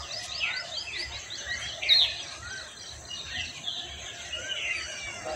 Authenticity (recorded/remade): recorded